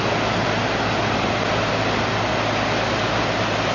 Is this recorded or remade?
recorded